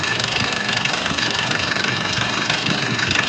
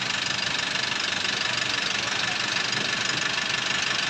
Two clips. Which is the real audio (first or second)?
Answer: second